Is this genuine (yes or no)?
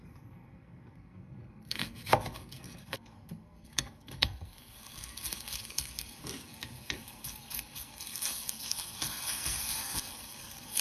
no